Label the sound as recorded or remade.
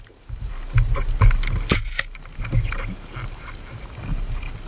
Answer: recorded